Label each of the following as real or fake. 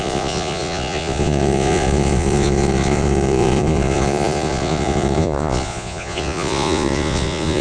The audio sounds fake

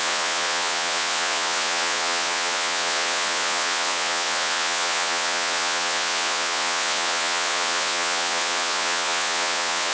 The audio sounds fake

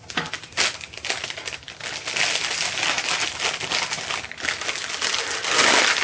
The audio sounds real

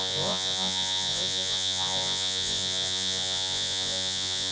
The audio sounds fake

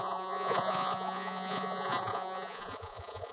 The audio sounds fake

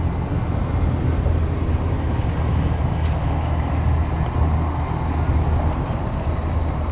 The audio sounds real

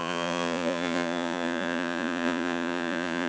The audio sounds fake